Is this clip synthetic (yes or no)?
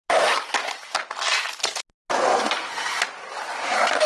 no